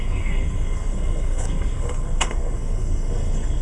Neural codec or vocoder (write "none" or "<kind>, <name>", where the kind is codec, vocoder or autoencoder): codec, SNAC